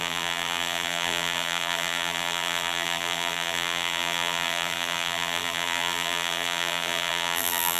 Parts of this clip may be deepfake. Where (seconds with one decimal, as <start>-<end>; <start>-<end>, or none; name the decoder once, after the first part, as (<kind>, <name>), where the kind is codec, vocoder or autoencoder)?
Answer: 0.0-7.8 (vocoder, BigVGAN v2)